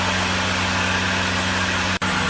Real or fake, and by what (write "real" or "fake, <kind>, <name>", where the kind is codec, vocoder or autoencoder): real